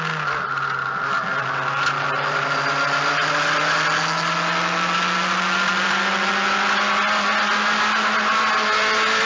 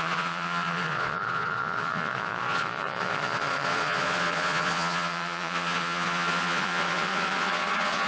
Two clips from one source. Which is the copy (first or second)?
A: second